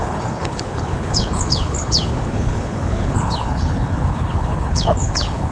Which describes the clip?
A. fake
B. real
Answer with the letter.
A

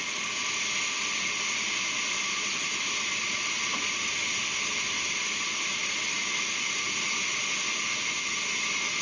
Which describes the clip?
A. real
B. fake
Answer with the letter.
B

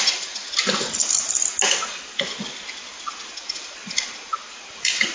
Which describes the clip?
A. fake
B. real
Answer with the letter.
B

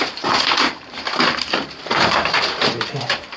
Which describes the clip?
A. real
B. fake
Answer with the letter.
B